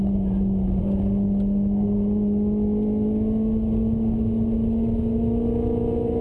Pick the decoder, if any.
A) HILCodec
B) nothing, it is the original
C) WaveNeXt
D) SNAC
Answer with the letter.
B